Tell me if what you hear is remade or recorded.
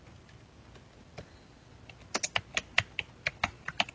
recorded